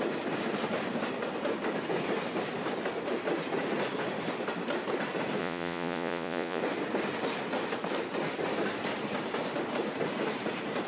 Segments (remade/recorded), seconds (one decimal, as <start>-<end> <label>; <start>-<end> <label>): 0.0-5.4 recorded; 5.4-6.6 remade; 6.6-10.9 recorded